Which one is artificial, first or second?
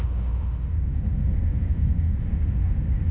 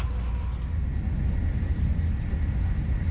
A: first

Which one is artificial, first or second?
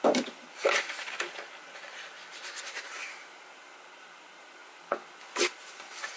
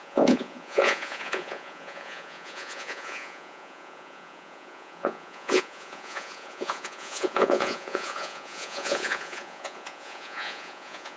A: second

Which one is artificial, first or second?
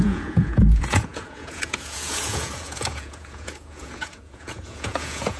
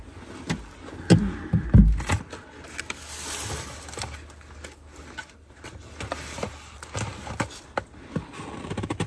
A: first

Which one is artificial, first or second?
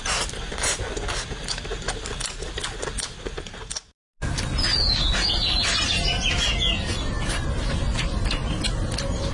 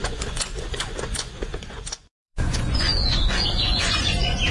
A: second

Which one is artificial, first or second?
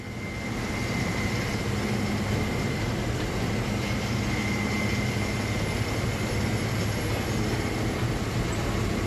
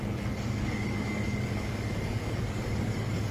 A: second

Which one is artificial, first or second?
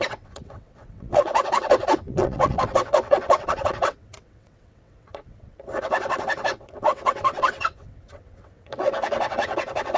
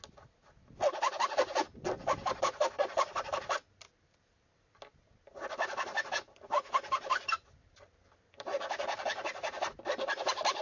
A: first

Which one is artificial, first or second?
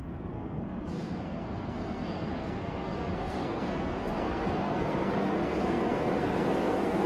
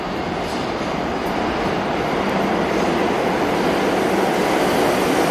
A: first